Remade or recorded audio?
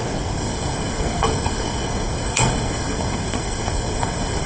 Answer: remade